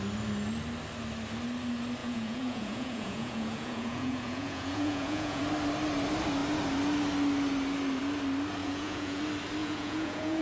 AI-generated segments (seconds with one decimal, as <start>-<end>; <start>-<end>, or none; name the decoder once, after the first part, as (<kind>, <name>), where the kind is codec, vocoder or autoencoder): 2.0-5.4 (vocoder, Vocos); 8.6-9.2; 9.6-10.4